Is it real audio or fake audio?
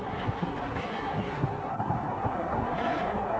fake